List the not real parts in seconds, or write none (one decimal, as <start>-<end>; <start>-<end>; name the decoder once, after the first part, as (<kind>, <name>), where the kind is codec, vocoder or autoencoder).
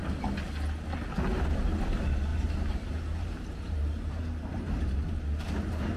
2.3-4.2 (vocoder, BigVGAN v2)